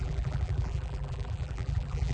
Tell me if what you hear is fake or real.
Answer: fake